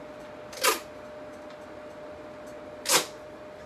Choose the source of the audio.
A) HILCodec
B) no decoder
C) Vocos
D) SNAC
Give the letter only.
B